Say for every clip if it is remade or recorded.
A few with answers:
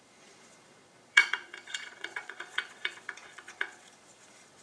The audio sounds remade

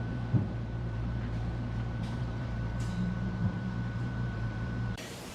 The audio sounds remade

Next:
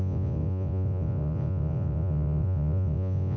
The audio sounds remade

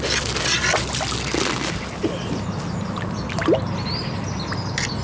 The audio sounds recorded